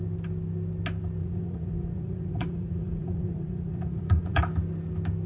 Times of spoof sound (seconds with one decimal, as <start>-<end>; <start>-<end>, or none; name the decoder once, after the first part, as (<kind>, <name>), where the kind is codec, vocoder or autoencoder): 1.2-4.4 (vocoder, Vocos)